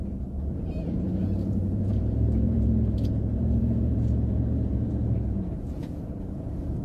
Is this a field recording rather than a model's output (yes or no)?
no